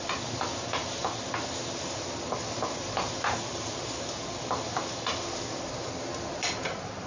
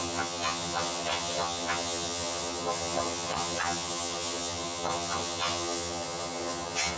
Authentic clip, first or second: first